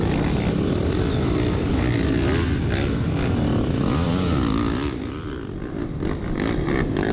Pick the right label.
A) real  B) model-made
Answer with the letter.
A